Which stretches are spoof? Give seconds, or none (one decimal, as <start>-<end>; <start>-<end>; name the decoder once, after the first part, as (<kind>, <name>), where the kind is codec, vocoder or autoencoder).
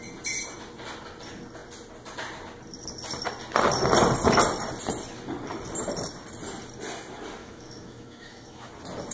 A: 7.4-8.7 (autoencoder, DAC-VAE)